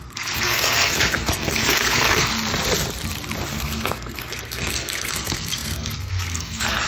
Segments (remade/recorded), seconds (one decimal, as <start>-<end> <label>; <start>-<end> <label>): 0.0-2.3 remade; 2.3-3.5 recorded; 3.5-6.9 remade